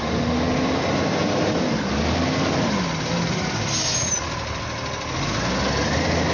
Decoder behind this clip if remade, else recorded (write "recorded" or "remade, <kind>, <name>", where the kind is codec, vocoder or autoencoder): recorded